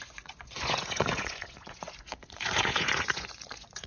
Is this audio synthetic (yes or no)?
yes